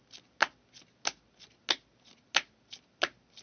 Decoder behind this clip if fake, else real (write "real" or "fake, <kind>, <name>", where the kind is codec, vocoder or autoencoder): real